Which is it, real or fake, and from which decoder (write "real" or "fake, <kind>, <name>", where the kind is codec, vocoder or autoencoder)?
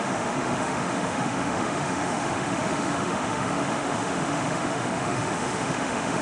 fake, autoencoder, DAC-VAE